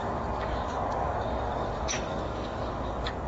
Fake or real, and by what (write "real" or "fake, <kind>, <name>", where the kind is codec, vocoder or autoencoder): fake, codec, DAC